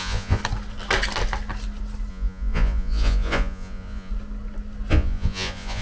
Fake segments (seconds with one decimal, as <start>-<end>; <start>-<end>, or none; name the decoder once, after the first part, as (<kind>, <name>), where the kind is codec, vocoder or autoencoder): 0.0-0.4 (vocoder, Vocos); 2.1-4.1; 4.9-5.8